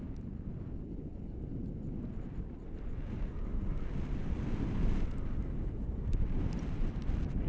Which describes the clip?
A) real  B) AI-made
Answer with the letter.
A